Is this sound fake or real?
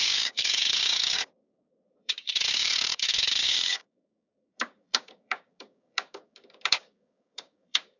fake